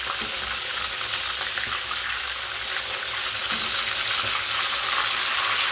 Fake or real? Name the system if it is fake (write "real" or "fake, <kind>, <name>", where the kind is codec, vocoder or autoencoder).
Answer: real